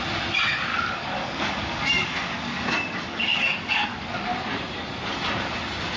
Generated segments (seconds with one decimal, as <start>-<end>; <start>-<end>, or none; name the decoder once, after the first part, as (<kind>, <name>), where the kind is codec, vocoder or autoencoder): 0.7-4.3 (codec, DAC)